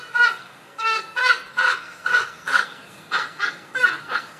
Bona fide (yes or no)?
no